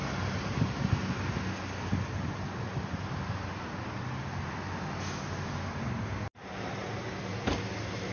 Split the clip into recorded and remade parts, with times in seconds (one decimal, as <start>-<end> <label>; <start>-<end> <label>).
0.0-8.1 recorded